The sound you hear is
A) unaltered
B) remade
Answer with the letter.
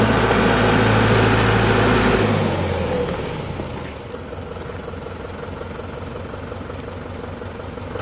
A